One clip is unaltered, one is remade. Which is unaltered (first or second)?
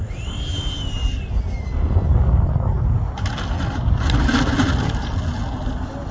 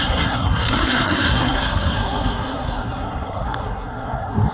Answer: first